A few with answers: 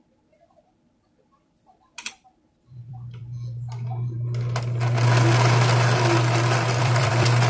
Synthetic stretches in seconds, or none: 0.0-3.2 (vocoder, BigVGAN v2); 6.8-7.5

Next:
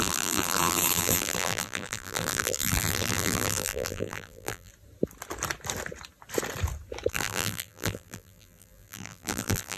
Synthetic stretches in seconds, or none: 0.0-4.7 (vocoder, BigVGAN v2); 7.1-9.8

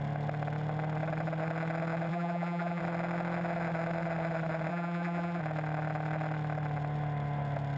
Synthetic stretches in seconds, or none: 2.1-2.8 (vocoder, BigVGAN v2); 4.7-5.4

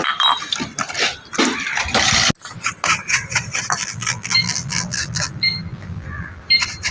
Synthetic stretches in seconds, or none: 3.8-6.4 (vocoder, BigVGAN v2)

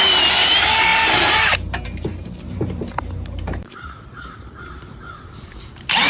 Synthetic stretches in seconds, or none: 0.0-6.1 (vocoder, BigVGAN v2)